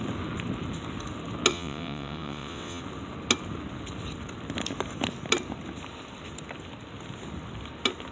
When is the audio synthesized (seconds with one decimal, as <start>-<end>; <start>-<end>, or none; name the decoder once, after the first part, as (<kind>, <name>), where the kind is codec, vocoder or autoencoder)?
1.5-2.8 (vocoder, WaveNeXt)